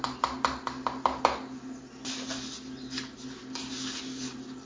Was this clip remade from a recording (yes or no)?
no